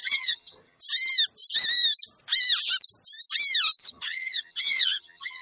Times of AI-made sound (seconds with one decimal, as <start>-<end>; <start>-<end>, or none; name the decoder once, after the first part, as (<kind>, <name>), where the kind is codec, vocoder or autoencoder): 0.0-0.8 (vocoder, HiFi-GAN); 3.8-5.4